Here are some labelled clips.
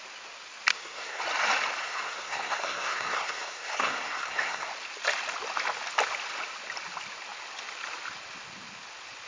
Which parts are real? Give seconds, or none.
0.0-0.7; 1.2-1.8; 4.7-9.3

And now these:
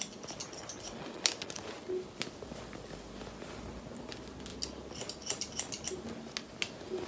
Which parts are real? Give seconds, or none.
0.0-7.1

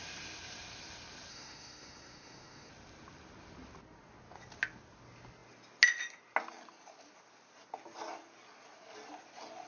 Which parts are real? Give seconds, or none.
0.0-1.3; 2.7-9.7

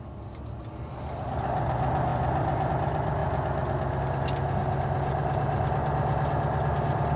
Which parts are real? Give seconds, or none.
0.0-7.2

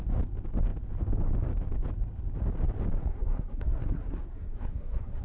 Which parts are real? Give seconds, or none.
0.0-3.0

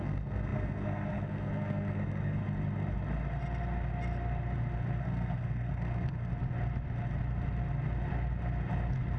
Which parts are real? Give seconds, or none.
2.4-5.0; 6.3-9.2

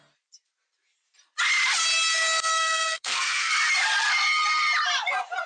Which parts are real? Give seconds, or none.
0.0-2.6; 3.5-5.5